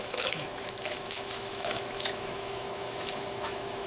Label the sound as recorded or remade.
remade